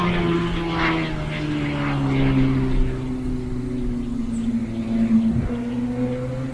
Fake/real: real